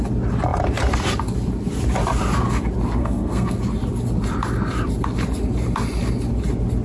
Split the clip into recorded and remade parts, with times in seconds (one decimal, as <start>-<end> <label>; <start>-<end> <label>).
0.0-3.0 recorded; 3.0-3.6 remade; 3.6-6.8 recorded